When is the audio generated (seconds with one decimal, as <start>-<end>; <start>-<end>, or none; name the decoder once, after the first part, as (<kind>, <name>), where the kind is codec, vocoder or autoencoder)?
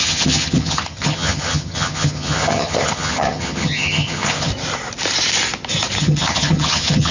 0.0-4.5 (vocoder, HiFi-GAN); 6.0-7.1